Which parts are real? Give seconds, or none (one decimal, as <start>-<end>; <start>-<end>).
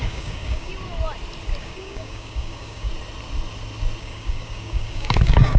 0.7-1.6; 2.9-4.0